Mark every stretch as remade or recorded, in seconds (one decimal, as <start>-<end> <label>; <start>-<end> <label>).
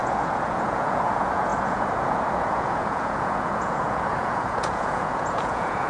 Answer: 0.0-5.9 remade